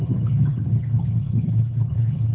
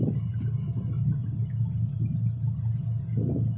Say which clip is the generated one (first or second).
first